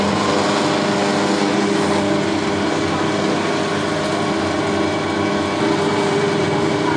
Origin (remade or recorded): recorded